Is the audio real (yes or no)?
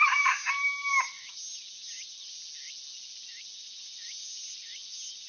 yes